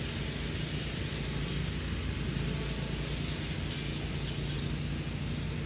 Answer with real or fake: real